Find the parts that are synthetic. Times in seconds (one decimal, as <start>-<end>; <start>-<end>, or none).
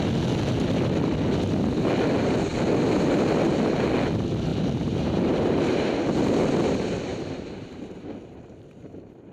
4.5-5.9; 7.1-9.3